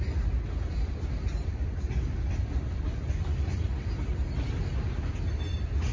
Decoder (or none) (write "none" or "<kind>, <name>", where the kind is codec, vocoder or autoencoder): none